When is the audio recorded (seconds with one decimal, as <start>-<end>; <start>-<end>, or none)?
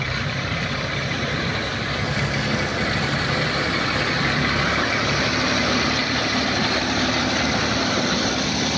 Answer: 1.2-2.7; 5.2-6.0; 8.3-8.8